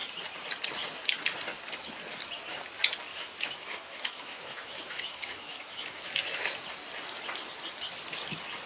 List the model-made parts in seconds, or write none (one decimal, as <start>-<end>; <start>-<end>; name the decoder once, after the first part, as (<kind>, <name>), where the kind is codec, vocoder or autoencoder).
3.1-6.0 (autoencoder, DAC-VAE)

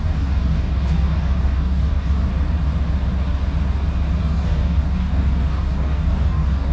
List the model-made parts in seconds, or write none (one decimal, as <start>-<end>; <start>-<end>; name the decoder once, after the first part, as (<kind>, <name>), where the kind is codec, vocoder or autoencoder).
0.0-2.3 (codec, DAC); 4.2-6.7

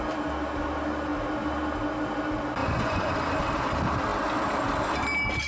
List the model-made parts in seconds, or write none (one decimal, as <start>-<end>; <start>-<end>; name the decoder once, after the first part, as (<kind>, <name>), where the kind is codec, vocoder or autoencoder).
2.6-3.1 (vocoder, Vocos)

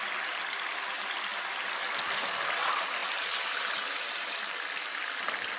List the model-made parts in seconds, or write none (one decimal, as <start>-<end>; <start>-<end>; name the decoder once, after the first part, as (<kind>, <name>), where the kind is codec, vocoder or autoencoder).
0.0-1.3 (vocoder, BigVGAN v2); 2.6-5.6